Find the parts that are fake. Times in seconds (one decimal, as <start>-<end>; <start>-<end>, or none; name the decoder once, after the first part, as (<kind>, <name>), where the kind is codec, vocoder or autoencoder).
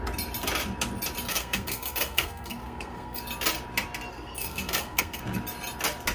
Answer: 1.3-3.2 (codec, SNAC); 4.1-5.2